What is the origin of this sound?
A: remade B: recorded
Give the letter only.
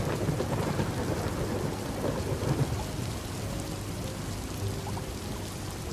B